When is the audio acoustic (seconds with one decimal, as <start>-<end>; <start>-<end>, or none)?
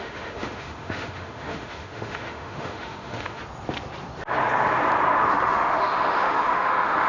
3.4-5.3